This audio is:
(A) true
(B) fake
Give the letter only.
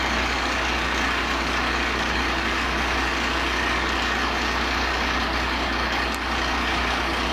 B